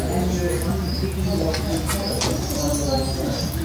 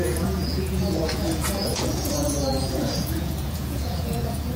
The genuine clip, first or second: first